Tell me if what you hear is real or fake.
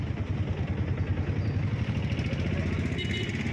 real